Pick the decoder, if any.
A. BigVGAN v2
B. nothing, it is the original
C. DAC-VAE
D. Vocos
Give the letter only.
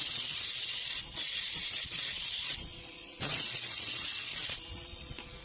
D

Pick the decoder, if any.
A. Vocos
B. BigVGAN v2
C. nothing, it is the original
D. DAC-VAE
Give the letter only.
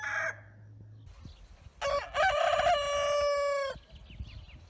C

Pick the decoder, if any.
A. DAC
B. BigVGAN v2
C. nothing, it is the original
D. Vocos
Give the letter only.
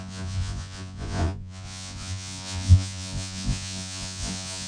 D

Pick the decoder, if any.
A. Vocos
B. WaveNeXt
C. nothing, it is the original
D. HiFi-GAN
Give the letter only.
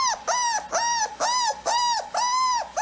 C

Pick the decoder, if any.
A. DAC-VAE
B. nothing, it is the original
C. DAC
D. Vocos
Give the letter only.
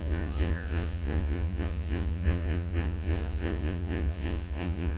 D